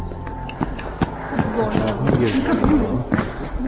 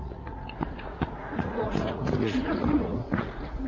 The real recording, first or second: first